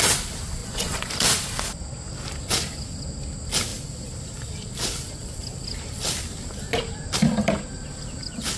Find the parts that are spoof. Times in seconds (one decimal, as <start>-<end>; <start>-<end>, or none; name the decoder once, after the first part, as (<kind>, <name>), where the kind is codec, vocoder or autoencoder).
0.6-1.1 (vocoder, Vocos)